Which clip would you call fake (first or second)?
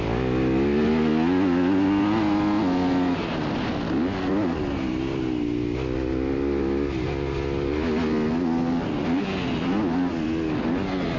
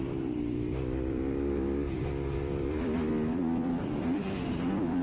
second